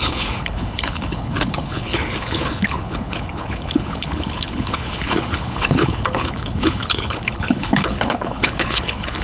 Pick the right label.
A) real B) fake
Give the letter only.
B